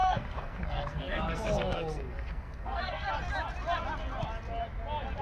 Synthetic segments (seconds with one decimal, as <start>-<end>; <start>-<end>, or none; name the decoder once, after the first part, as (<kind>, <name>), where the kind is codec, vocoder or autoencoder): 0.0-3.1 (codec, SNAC)